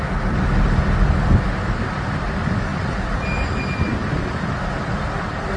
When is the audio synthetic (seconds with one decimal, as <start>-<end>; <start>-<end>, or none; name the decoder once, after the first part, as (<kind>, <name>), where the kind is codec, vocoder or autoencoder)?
2.7-3.6 (vocoder, BigVGAN v2); 4.0-5.6